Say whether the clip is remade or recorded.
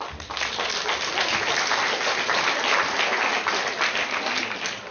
recorded